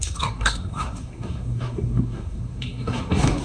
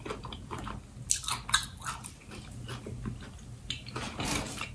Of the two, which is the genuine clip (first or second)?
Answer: second